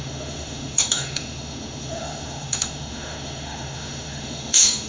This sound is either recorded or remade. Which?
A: remade